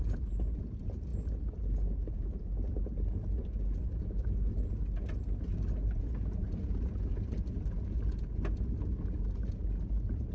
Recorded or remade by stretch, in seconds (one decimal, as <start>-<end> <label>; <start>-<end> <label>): 0.0-10.3 recorded